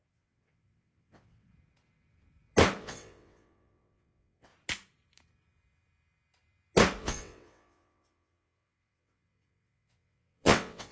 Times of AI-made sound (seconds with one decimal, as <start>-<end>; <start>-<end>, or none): 0.0-1.5; 2.8-4.5; 7.0-10.9